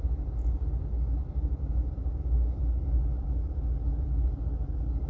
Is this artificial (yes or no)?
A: no